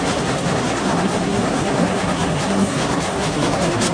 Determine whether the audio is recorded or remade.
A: remade